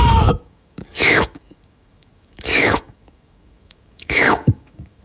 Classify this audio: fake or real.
fake